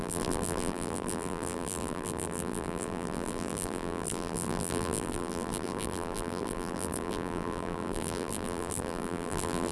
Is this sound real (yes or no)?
no